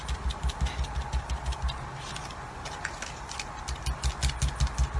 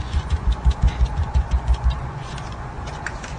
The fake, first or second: second